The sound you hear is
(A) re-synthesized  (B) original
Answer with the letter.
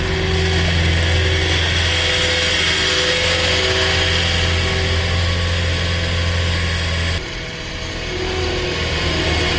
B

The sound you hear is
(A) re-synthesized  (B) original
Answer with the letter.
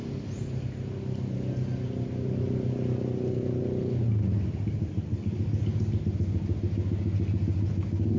B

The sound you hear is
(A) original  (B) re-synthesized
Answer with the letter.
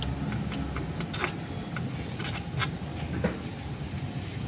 A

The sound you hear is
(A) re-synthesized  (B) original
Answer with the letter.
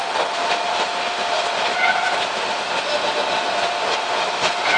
B